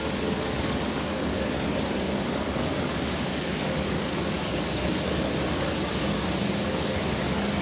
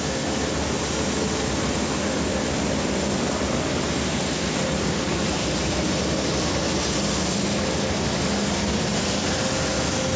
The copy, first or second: first